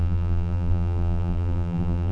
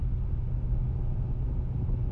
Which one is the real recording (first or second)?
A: second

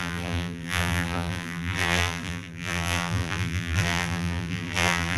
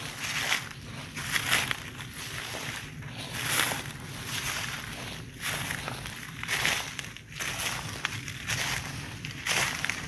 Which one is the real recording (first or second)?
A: second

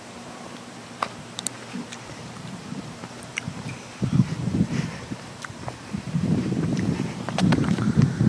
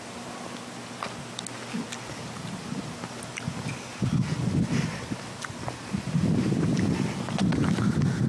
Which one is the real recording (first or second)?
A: second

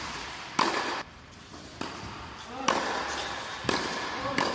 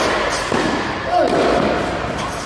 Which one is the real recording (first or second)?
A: second